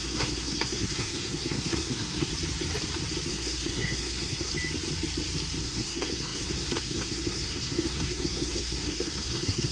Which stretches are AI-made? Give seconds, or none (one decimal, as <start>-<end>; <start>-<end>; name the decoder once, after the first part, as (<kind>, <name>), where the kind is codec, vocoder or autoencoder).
0.0-2.3 (codec, SNAC); 3.3-4.5; 5.6-9.7